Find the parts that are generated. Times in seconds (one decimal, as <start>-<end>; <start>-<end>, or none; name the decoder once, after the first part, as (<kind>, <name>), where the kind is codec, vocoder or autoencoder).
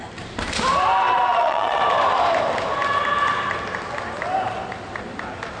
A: 1.0-1.8 (vocoder, WaveNeXt)